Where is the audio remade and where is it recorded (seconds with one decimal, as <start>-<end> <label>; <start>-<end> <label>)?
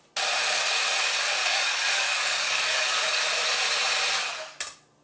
0.0-1.4 recorded; 1.4-3.2 remade; 3.2-5.0 recorded